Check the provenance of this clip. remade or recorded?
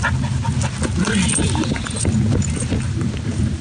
recorded